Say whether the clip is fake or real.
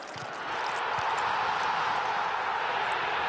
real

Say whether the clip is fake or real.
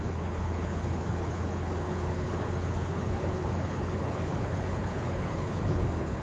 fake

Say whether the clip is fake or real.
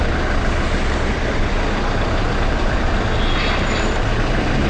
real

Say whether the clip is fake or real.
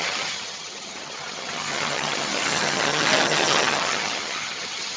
fake